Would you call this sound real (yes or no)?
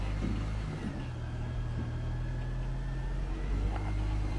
yes